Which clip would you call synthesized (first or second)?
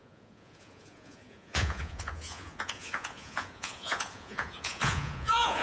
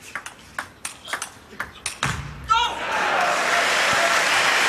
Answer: first